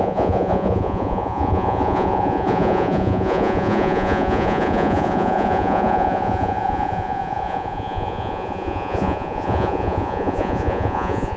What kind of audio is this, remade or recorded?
remade